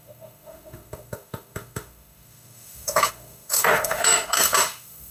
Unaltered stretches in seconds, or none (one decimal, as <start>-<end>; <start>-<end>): none